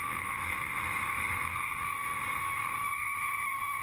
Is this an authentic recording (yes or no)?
no